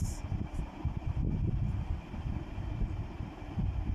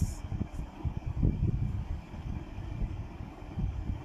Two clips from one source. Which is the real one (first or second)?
first